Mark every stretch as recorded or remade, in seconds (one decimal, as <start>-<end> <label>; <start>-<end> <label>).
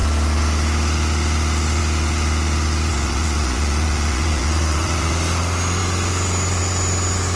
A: 0.0-2.9 recorded; 2.9-5.1 remade; 5.1-7.4 recorded